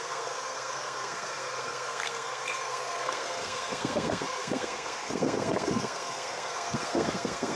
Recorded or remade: remade